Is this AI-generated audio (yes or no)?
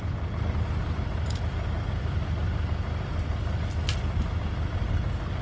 no